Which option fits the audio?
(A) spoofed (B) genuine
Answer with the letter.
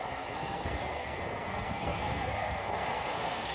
A